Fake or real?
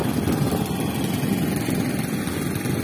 real